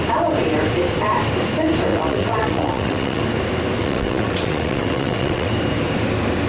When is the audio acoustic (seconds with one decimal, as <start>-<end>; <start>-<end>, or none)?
0.0-1.9; 3.2-3.8; 5.5-6.5